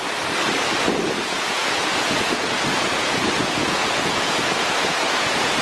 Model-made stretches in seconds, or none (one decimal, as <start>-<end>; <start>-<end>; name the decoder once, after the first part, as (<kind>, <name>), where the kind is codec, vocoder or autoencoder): 1.3-5.6 (vocoder, Vocos)